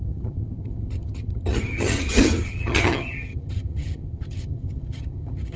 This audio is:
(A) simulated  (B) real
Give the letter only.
A